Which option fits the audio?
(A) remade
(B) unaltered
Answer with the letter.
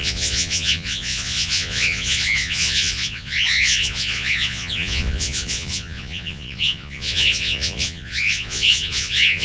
A